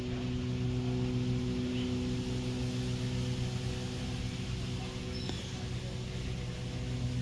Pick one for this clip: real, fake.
real